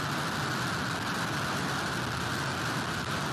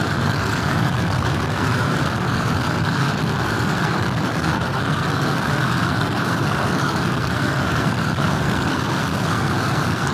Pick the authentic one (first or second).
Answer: first